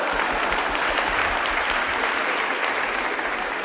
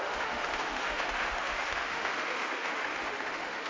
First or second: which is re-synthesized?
second